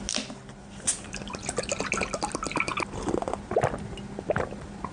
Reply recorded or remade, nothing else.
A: recorded